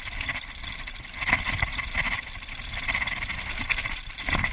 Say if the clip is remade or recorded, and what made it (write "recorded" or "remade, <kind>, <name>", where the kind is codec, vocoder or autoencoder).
recorded